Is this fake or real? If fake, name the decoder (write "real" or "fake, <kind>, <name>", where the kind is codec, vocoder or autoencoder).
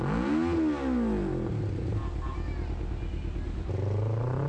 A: real